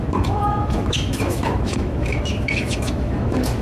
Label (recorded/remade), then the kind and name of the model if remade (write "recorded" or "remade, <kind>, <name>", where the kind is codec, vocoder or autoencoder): remade, autoencoder, DAC-VAE